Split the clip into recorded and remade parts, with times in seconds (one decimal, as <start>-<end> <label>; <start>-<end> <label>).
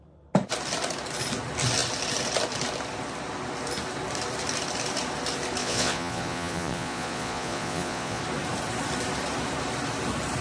0.0-5.6 recorded; 5.6-8.2 remade; 8.2-10.4 recorded